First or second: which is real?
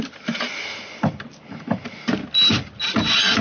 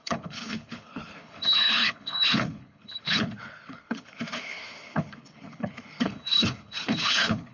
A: first